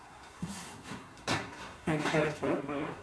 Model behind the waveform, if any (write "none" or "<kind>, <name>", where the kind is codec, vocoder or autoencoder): codec, SNAC